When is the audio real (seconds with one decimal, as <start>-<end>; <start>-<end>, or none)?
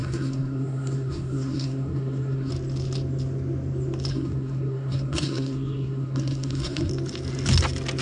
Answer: 2.5-4.1; 6.9-8.0